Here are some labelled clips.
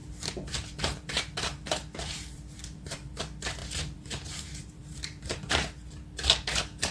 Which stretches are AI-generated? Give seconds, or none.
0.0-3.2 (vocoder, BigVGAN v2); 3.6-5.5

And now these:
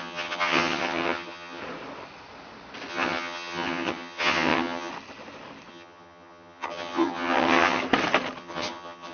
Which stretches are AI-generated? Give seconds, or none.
0.0-1.6 (vocoder, HiFi-GAN); 2.9-4.9; 5.7-7.8; 8.4-9.1

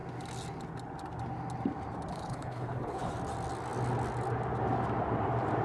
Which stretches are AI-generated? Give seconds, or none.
2.1-3.1 (codec, HILCodec)

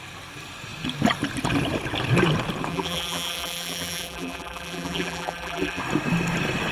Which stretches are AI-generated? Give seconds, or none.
2.7-5.8 (vocoder, BigVGAN v2)